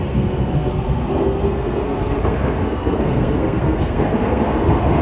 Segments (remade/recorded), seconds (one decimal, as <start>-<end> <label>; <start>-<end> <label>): 0.0-5.0 remade